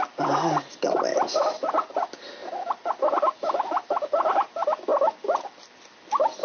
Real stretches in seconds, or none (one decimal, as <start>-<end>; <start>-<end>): 0.0-6.4